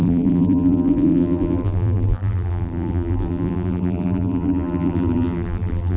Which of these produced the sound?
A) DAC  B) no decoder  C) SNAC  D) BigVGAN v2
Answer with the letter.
D